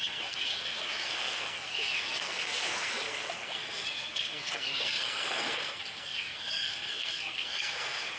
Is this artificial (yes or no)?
yes